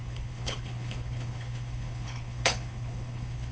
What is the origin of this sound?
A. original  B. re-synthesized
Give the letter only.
B